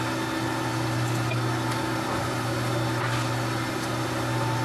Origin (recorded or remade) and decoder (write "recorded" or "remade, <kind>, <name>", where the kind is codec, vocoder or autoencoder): recorded